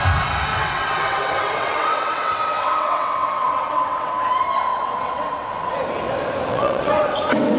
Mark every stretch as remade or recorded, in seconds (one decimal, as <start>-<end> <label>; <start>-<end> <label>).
0.0-0.5 recorded; 0.5-4.1 remade; 4.1-4.7 recorded; 4.7-5.5 remade; 5.5-6.5 recorded; 6.5-7.6 remade

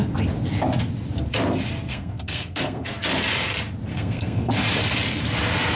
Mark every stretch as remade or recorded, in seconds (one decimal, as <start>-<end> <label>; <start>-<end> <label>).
0.0-1.9 recorded; 1.9-3.0 remade; 3.0-3.9 recorded; 3.9-4.5 remade; 4.5-5.7 recorded

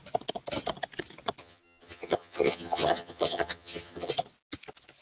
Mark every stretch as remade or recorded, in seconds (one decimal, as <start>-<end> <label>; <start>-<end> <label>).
0.0-1.4 recorded; 1.4-4.1 remade; 4.1-5.0 recorded

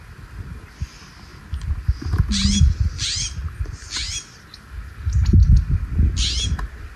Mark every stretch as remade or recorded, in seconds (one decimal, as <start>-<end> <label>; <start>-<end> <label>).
0.0-7.0 recorded

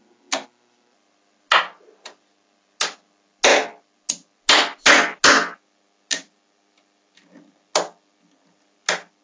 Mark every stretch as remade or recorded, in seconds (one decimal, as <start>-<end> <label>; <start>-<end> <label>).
0.0-9.2 recorded